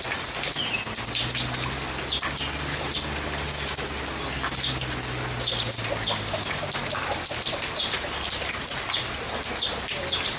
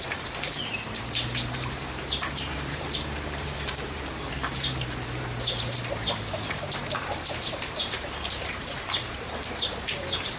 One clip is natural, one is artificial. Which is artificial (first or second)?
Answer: second